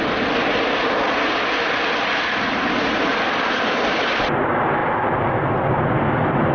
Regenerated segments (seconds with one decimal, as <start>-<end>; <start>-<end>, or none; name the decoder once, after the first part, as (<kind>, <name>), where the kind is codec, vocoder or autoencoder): none